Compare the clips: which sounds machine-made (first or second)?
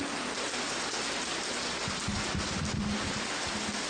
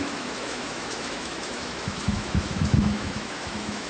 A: second